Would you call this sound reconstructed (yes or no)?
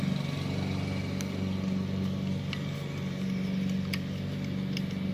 no